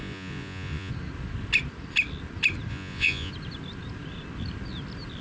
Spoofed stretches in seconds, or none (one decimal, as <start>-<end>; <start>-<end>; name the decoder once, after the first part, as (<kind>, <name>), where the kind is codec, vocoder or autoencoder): 0.0-0.9 (vocoder, Vocos); 2.7-3.3